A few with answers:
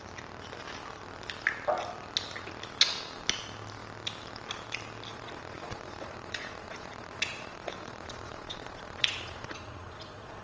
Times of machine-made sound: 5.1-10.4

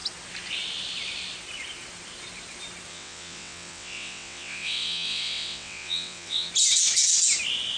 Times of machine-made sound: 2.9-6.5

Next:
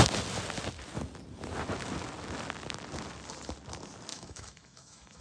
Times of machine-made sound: 4.1-5.2

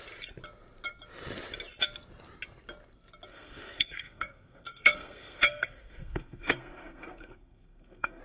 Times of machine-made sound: 3.3-8.2

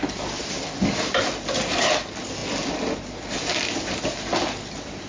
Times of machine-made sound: 2.4-4.0

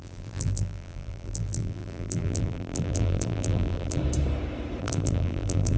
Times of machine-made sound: 0.0-4.0; 4.8-5.8

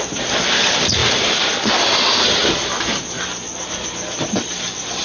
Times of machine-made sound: none